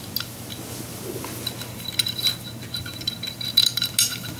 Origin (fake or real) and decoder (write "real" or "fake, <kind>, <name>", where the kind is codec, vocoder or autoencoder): real